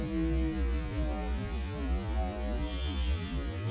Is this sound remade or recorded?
recorded